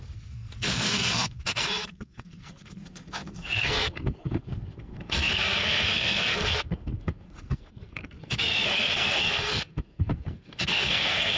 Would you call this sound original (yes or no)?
no